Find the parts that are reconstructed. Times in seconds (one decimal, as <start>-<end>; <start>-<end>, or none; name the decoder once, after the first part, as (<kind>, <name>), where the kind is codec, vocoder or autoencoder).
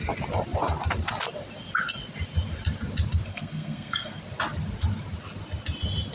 3.3-4.2 (codec, SNAC)